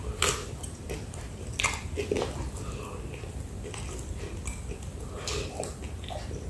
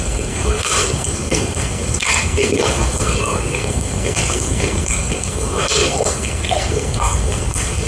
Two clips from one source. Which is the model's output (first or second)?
second